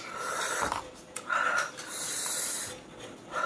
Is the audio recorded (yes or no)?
yes